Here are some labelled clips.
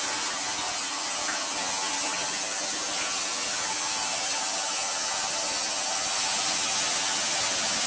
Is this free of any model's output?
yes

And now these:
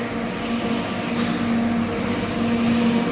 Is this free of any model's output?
yes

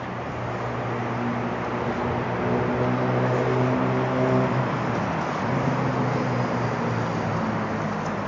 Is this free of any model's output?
yes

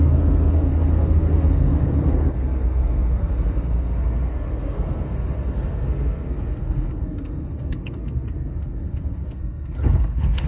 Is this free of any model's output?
no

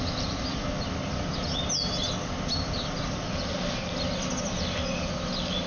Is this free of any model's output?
yes